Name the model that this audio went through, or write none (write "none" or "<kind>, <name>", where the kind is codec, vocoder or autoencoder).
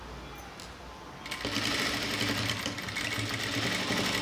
none